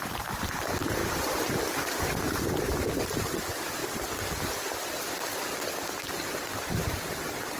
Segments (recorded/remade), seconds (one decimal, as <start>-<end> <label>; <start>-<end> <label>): 0.0-3.8 remade; 3.8-6.1 recorded; 6.1-7.6 remade